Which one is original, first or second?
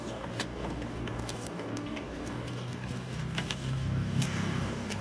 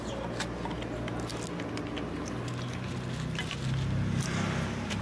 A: second